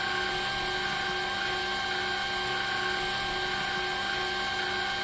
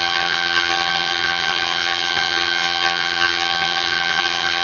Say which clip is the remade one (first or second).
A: second